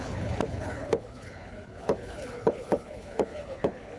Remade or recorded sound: remade